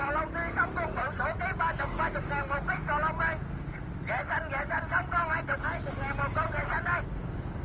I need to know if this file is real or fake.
real